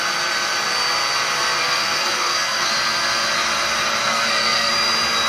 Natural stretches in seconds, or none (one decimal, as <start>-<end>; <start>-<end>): 0.0-1.6; 2.7-4.0; 4.7-5.3